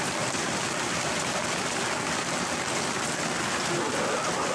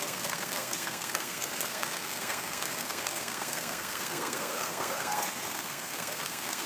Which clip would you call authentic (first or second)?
first